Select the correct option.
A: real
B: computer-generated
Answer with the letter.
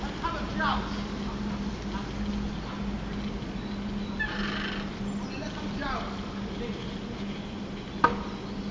A